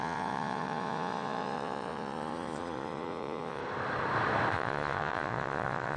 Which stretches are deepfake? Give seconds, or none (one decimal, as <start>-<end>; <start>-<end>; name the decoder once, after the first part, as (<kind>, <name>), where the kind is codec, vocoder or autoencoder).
0.0-3.6 (vocoder, Vocos); 4.5-6.0